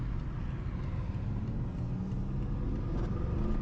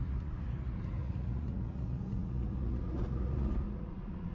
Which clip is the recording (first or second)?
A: first